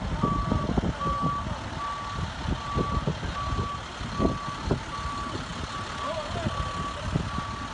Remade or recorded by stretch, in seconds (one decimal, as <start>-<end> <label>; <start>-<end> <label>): 0.0-7.7 recorded